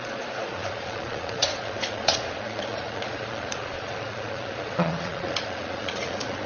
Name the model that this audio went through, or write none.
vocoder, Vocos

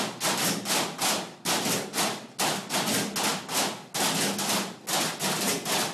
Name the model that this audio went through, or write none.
none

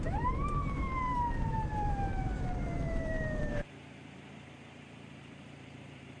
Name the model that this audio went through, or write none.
vocoder, BigVGAN v2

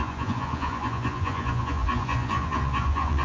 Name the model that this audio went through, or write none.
vocoder, Vocos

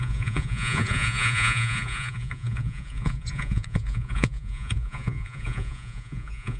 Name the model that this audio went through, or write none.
vocoder, Vocos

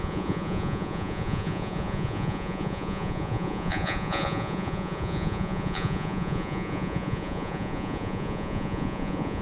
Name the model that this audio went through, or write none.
vocoder, Vocos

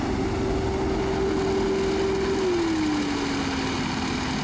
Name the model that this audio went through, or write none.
none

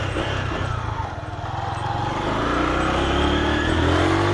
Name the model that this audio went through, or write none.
none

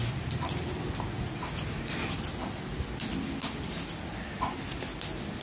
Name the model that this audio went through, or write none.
none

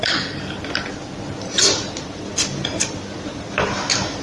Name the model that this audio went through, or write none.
none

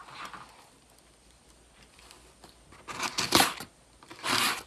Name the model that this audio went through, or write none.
none